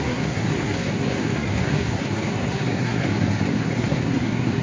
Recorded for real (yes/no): no